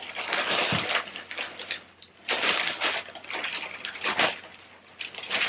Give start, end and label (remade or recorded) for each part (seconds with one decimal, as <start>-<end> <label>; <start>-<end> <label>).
0.0-5.5 recorded